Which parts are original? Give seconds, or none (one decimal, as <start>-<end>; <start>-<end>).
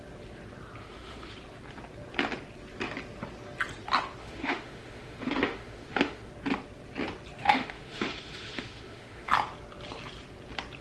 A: 0.0-0.8; 1.3-4.2; 6.3-7.4; 9.3-10.8